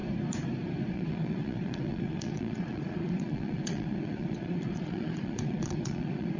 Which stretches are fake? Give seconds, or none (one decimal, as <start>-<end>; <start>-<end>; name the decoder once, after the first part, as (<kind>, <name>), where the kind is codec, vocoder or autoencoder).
0.9-6.4 (vocoder, Vocos)